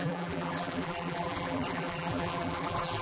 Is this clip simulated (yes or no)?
yes